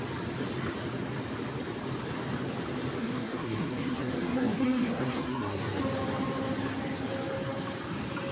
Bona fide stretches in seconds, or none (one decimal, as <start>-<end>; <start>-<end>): 0.0-3.0; 5.8-8.3